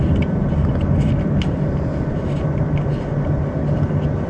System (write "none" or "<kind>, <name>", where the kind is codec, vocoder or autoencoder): none